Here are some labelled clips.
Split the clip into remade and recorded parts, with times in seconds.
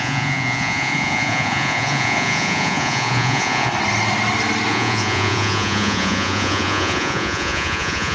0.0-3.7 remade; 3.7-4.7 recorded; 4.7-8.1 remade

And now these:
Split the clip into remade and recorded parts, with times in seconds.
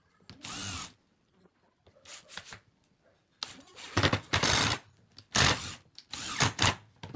0.0-7.2 recorded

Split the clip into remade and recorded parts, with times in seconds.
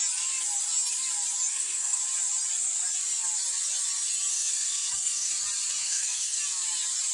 0.0-1.5 recorded; 1.5-2.0 remade; 2.0-4.3 recorded; 4.3-5.3 remade; 5.3-5.8 recorded; 5.8-6.4 remade; 6.4-7.1 recorded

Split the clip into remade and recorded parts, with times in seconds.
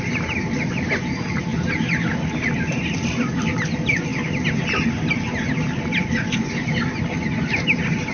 0.0-8.1 recorded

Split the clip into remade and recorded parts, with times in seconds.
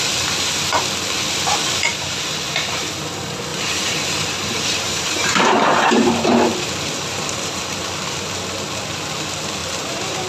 0.0-1.9 recorded; 1.9-2.8 remade; 2.8-3.5 recorded; 3.5-7.6 remade; 7.6-9.6 recorded; 9.6-10.3 remade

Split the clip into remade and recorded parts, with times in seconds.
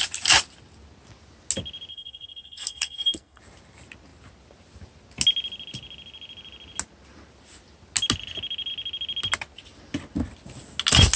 0.0-1.9 recorded; 1.9-3.4 remade; 3.4-11.2 recorded